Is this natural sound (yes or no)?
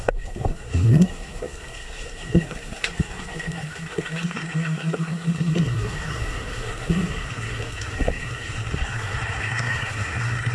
no